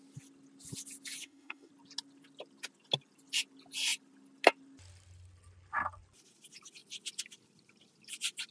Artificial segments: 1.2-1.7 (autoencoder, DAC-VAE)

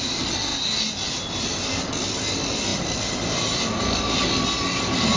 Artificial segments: none